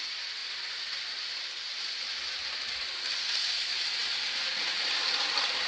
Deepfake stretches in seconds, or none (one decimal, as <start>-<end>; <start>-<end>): none